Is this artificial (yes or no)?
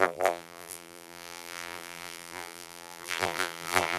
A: yes